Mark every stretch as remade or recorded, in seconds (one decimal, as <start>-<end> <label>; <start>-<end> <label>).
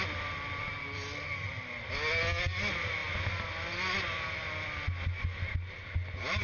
0.0-6.4 recorded